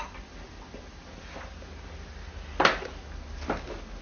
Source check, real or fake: real